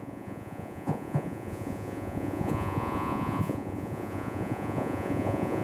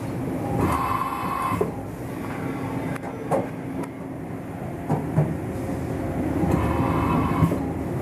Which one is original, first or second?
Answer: second